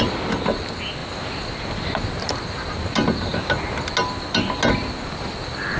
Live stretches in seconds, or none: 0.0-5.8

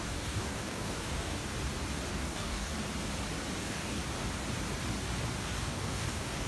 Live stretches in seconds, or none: 1.4-2.1; 2.7-3.6; 4.0-5.4

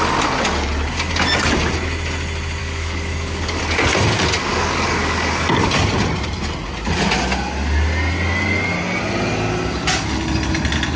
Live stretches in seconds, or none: 0.0-2.6; 3.6-4.4; 5.4-11.0